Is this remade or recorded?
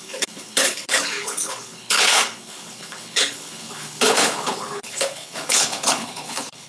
remade